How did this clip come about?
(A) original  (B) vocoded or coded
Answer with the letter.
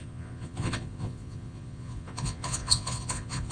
B